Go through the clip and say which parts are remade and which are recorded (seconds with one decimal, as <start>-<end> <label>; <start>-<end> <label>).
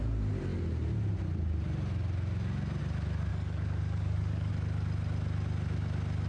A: 0.0-3.3 recorded; 3.3-4.5 remade; 4.5-6.3 recorded